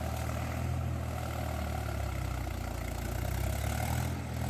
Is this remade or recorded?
recorded